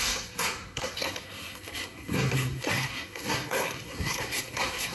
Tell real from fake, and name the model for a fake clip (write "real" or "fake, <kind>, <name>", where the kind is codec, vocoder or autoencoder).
fake, codec, SNAC